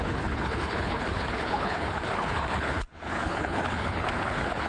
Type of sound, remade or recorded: remade